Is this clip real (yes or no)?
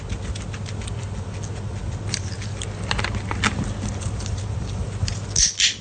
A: yes